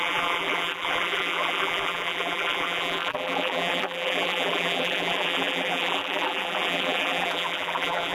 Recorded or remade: remade